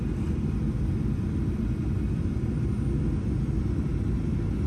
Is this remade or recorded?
remade